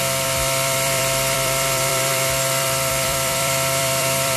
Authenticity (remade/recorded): remade